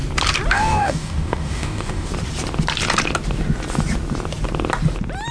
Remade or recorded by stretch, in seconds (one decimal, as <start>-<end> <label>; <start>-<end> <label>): 0.0-0.5 recorded; 0.5-2.1 remade; 2.1-5.3 recorded